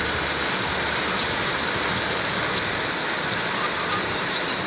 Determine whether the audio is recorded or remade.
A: recorded